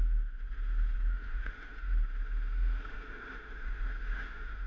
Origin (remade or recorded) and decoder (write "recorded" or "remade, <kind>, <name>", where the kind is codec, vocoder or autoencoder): remade, autoencoder, DAC-VAE